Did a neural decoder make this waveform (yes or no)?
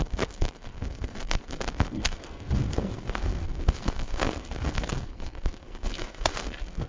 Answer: yes